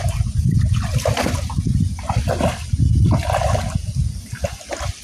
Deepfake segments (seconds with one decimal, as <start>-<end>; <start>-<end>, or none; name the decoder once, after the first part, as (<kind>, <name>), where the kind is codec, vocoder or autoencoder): 0.9-2.8 (vocoder, BigVGAN v2)

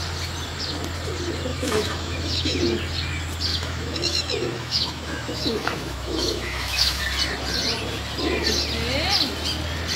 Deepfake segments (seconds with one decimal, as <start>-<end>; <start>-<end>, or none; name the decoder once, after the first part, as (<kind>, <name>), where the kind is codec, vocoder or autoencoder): 1.5-2.6 (autoencoder, DAC-VAE); 3.5-7.0

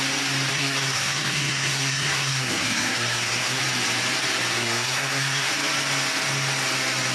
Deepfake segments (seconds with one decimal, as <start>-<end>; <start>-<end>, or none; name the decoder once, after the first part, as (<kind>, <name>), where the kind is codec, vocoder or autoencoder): 0.5-3.6 (codec, SNAC); 4.5-5.5

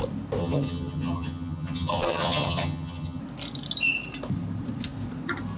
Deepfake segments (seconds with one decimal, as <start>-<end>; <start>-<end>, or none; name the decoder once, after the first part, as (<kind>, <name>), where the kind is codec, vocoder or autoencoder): 0.4-3.2 (vocoder, HiFi-GAN)

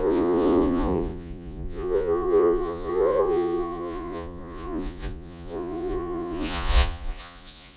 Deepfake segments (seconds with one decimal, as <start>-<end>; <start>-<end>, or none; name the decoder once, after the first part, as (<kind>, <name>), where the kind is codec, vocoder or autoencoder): 0.0-7.8 (vocoder, Vocos)

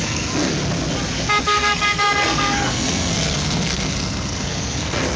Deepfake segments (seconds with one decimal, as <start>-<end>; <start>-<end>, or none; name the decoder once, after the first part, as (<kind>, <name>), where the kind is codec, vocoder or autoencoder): 0.0-0.5 (codec, SNAC); 1.4-5.2